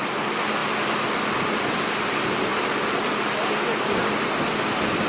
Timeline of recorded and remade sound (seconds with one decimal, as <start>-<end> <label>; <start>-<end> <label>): 0.0-5.1 recorded